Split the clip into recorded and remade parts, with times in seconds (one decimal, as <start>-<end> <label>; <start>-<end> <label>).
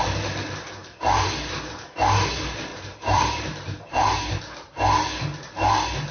0.0-0.8 recorded; 0.8-1.9 remade; 1.9-2.7 recorded; 2.7-4.4 remade; 4.4-6.1 recorded